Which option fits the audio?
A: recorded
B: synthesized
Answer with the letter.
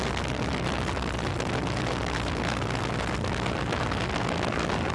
A